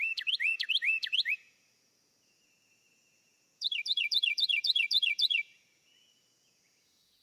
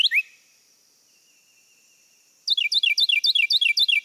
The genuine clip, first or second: second